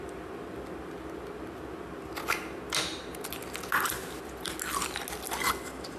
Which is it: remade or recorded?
recorded